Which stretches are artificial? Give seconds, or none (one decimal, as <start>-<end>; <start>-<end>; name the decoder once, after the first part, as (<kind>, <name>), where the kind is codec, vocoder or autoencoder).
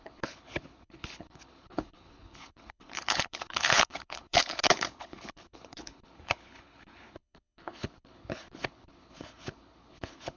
0.0-10.4 (codec, HILCodec)